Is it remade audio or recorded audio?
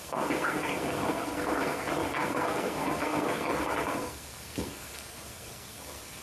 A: remade